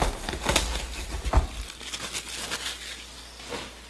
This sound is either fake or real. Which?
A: real